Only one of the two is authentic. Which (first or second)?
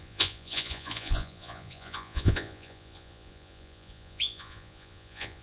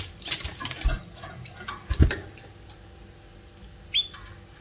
second